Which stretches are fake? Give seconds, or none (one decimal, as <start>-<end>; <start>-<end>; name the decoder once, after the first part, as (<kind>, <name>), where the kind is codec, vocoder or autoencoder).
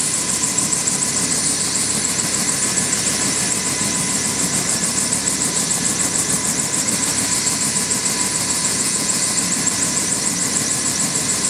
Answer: 8.6-9.2 (vocoder, Vocos)